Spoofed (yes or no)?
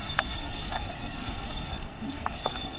yes